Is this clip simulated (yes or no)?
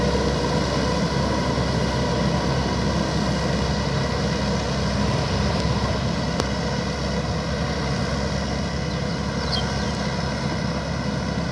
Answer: no